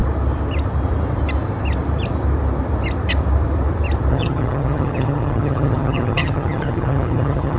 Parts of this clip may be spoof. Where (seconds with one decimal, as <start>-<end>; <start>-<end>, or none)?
4.1-7.6